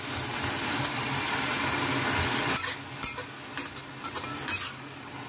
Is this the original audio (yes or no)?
yes